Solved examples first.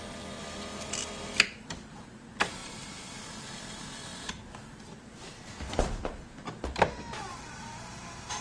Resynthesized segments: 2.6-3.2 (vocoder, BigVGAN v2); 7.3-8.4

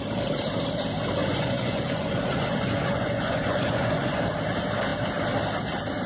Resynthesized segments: 1.2-4.2 (vocoder, Vocos)